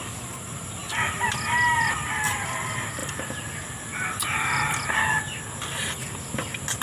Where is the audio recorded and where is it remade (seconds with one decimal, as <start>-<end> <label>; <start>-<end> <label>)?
0.0-6.8 recorded